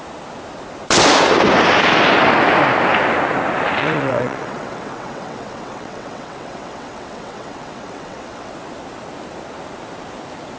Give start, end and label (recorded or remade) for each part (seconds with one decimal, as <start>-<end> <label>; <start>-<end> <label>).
0.0-3.8 recorded; 3.8-8.5 remade; 8.5-10.6 recorded